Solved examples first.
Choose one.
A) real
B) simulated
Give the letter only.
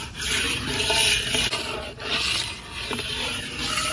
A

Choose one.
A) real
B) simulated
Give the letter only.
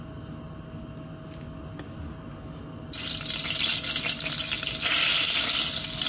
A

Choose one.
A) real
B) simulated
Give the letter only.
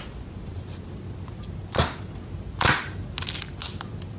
A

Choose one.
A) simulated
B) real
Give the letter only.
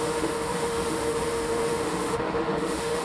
A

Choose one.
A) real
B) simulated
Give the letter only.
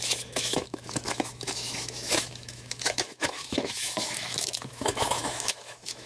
B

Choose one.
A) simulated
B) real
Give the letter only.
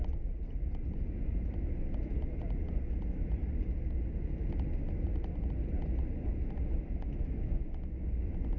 B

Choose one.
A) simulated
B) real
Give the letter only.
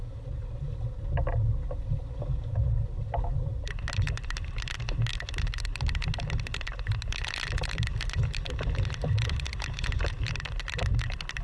B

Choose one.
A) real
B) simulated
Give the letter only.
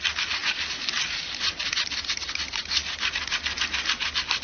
A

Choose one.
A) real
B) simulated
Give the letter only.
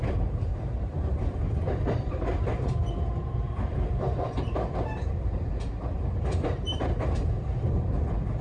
B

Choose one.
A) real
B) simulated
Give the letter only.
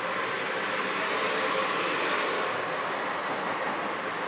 A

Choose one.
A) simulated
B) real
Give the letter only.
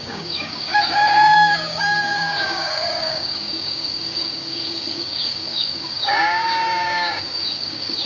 A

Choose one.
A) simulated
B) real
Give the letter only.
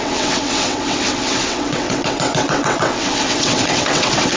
A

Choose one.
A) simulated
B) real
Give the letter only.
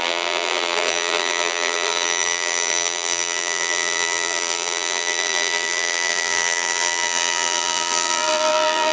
A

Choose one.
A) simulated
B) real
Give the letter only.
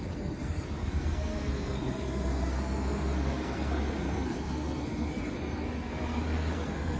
A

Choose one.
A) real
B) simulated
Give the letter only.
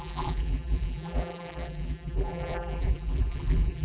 B